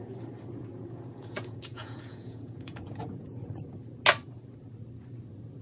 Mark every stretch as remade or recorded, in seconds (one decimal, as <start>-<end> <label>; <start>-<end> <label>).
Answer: 0.0-0.6 recorded; 0.6-3.4 remade; 3.4-5.6 recorded